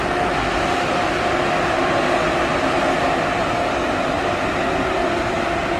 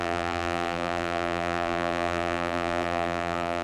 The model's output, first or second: second